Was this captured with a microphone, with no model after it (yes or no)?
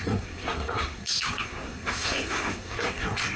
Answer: no